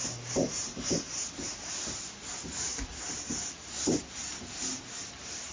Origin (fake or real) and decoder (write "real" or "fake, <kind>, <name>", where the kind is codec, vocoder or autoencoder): fake, vocoder, BigVGAN v2